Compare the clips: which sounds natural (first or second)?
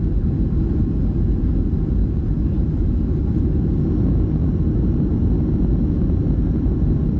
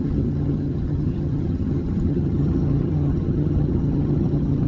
first